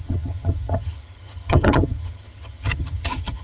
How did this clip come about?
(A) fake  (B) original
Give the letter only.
A